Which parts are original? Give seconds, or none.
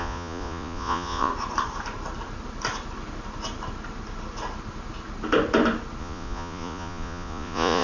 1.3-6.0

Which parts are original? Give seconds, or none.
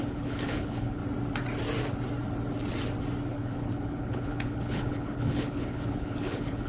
1.0-3.3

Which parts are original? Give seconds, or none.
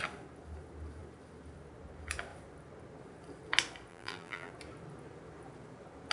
0.0-3.9; 4.5-6.1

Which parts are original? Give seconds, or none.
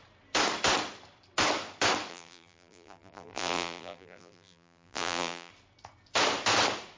0.0-2.1; 5.5-7.0